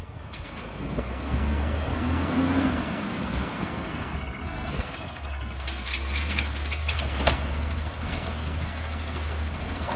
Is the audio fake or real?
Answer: fake